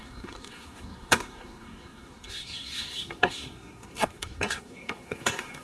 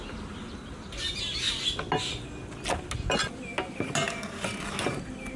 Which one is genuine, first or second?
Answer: second